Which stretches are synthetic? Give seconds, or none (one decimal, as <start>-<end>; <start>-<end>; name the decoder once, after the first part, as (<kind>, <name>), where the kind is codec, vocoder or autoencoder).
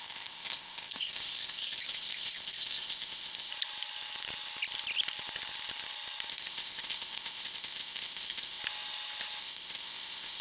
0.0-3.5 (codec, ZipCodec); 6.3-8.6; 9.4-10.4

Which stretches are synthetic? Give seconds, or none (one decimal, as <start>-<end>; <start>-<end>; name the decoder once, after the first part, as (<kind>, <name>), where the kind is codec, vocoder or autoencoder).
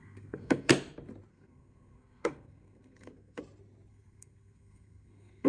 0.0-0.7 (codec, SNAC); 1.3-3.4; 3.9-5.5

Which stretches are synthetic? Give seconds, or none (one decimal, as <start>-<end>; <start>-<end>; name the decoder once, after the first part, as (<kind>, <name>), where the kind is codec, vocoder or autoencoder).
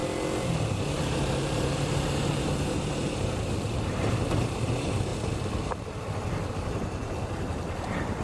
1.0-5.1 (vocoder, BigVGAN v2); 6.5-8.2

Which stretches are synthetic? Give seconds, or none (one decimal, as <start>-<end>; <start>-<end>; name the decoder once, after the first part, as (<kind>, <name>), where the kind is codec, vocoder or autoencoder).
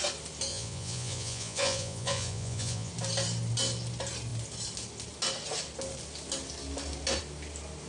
0.5-2.9 (vocoder, Vocos)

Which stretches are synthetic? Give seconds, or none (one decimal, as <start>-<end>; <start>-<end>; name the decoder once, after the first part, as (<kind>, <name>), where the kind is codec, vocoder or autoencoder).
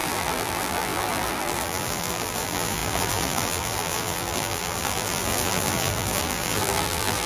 0.0-7.3 (vocoder, BigVGAN v2)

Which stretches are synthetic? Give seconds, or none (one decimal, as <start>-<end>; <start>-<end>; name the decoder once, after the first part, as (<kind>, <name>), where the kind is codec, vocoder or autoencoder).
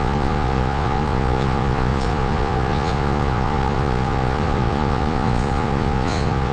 0.0-6.5 (vocoder, Vocos)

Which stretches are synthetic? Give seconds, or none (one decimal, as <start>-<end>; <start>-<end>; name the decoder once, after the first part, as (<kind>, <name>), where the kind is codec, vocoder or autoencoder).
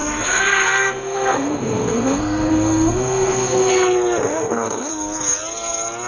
0.0-3.7 (codec, SNAC); 4.3-4.9